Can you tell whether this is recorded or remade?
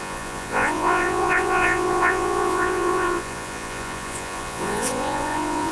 remade